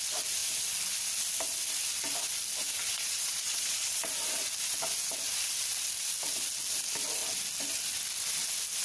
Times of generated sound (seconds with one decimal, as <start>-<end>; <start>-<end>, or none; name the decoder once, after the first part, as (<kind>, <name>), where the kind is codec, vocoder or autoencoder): 2.8-4.1 (vocoder, Vocos)